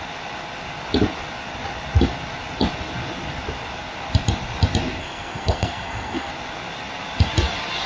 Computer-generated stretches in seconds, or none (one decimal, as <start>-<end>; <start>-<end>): 5.0-6.3